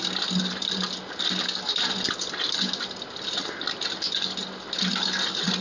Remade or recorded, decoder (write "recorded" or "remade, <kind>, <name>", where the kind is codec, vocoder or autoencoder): recorded